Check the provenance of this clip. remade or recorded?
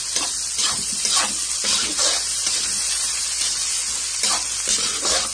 recorded